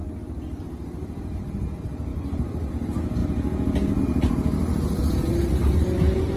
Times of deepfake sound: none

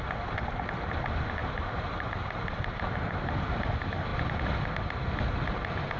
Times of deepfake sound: 1.4-3.6 (vocoder, BigVGAN v2); 4.1-4.7

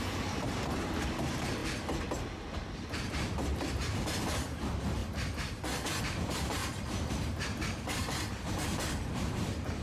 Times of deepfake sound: 0.0-1.6 (vocoder, BigVGAN v2); 2.8-5.0; 6.0-6.6; 7.1-9.8

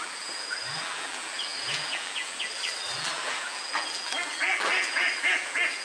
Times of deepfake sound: 0.0-5.8 (vocoder, BigVGAN v2)

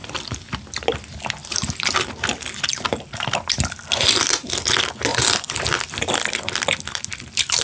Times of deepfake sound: 0.0-0.6 (vocoder, BigVGAN v2); 1.4-2.1; 5.1-7.6

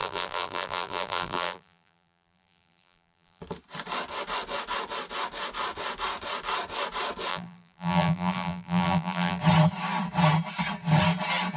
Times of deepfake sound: 0.0-3.4 (vocoder, BigVGAN v2); 7.3-9.4

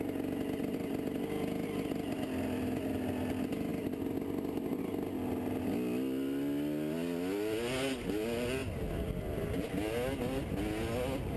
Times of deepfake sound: none

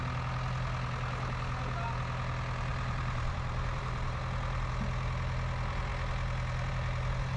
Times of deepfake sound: 2.7-4.2 (vocoder, BigVGAN v2)